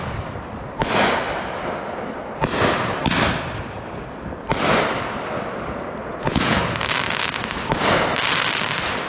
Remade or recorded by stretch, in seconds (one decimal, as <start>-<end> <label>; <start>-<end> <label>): 0.0-6.0 recorded; 6.0-6.6 remade; 6.6-9.1 recorded